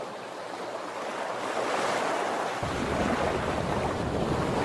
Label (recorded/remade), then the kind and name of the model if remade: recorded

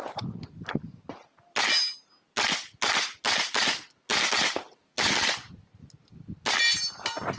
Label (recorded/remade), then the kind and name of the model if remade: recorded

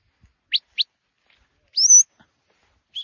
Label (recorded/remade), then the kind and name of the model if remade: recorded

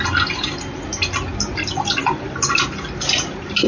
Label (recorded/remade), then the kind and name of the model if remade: recorded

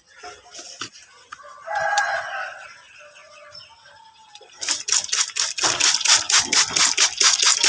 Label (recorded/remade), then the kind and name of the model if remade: recorded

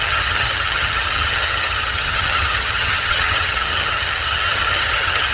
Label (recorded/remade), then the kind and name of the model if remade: remade, vocoder, HiFi-GAN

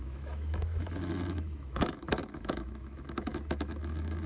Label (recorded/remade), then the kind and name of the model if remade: remade, autoencoder, DAC-VAE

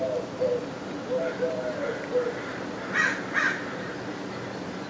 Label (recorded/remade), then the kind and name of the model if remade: recorded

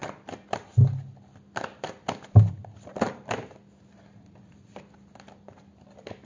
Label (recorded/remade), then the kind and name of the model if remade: recorded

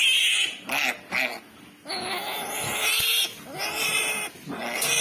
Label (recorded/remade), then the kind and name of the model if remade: recorded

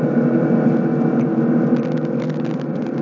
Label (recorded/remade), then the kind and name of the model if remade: recorded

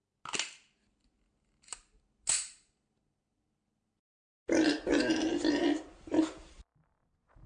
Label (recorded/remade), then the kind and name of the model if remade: recorded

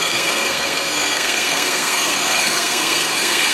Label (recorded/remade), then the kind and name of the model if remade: remade, codec, SNAC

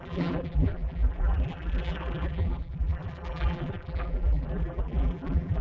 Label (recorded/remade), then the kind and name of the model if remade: remade, vocoder, BigVGAN v2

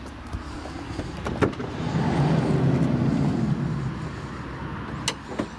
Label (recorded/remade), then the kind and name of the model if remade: recorded